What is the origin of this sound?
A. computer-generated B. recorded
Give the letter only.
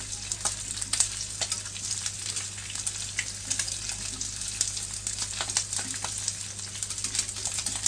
B